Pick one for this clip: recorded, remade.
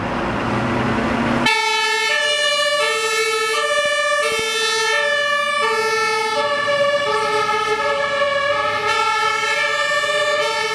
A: recorded